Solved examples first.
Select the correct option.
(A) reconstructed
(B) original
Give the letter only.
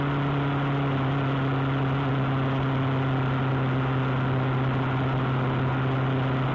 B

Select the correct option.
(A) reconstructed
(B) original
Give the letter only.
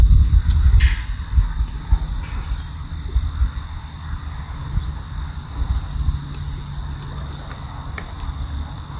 B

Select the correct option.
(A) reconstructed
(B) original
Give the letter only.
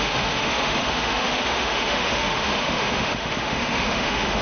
A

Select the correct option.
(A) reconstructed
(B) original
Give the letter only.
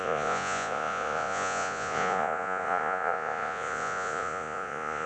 A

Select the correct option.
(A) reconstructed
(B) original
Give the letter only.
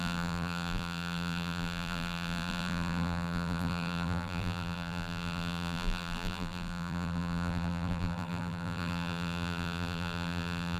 A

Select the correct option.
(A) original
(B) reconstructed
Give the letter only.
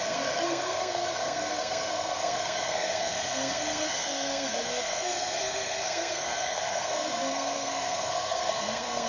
B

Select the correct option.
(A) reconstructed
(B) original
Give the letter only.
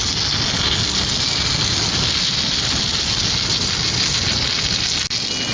B